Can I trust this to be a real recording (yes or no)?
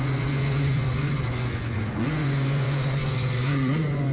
no